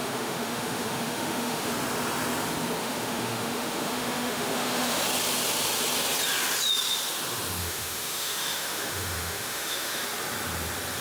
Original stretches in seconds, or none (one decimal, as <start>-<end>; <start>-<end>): 1.7-2.8; 5.0-7.6; 10.0-11.0